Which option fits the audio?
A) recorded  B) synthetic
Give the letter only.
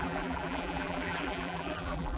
B